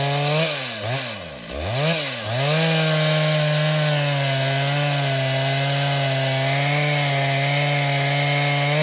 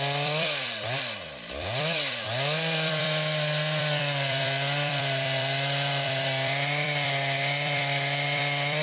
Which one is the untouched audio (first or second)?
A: first